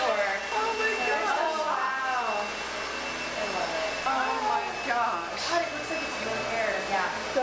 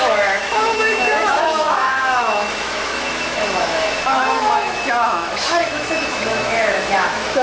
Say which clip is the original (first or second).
first